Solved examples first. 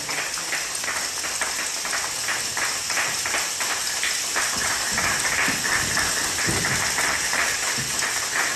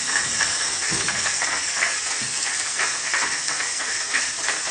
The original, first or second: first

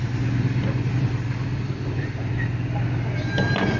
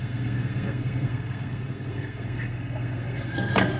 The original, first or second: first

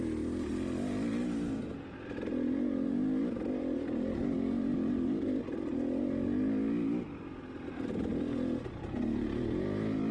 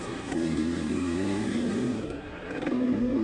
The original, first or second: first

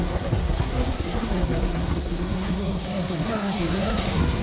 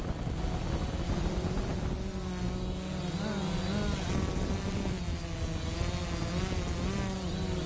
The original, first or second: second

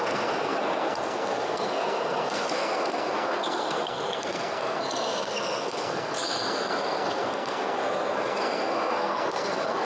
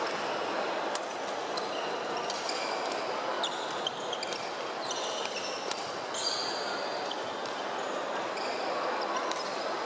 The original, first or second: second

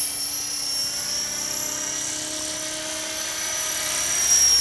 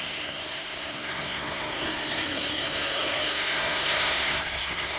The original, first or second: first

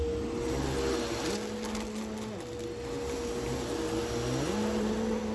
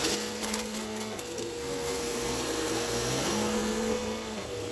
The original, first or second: first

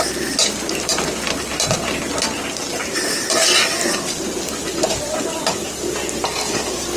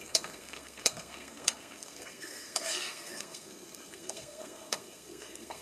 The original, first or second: first